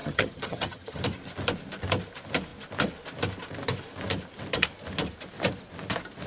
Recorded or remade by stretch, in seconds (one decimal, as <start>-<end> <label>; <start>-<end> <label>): 0.0-1.0 remade; 1.0-6.3 recorded